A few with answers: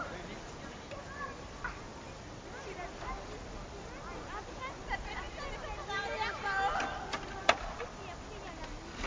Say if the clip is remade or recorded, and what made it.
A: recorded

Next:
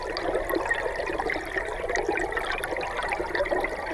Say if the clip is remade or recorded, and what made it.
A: recorded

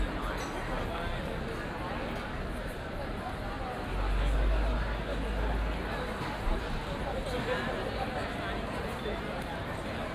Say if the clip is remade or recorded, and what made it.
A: recorded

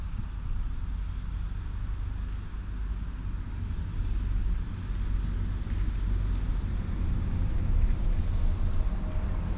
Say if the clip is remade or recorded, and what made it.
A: recorded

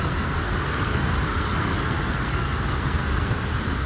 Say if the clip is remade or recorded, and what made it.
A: remade, codec, SNAC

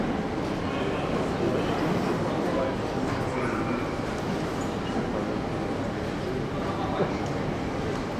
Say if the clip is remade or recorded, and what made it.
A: recorded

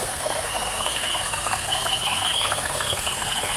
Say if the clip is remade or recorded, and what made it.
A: remade, codec, SNAC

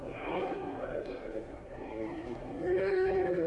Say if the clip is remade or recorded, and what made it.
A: remade, codec, SNAC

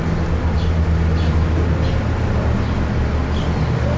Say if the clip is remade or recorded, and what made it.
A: recorded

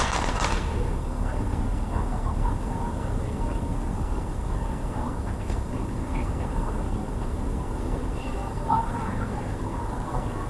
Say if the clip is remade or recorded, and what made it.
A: remade, codec, SNAC